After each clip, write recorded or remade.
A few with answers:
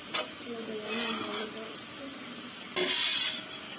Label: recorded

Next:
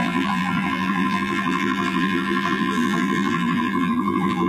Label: remade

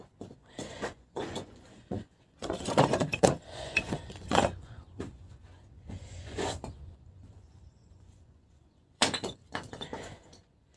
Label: remade